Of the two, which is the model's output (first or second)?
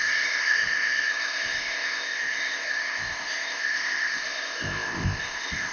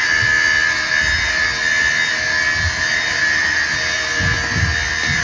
first